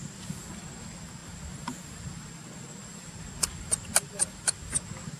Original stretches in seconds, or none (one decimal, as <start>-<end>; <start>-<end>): 0.0-5.2